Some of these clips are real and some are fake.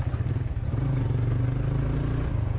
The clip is real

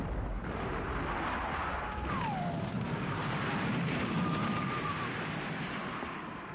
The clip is fake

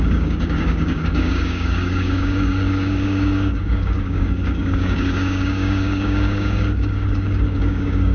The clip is fake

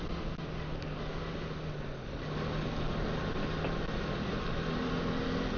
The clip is real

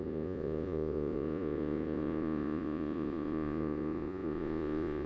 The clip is fake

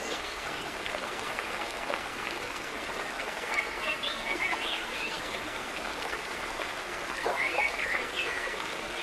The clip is fake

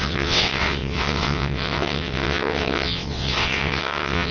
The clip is fake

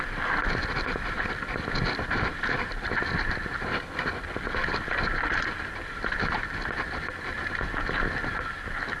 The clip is real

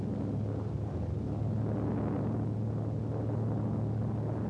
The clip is real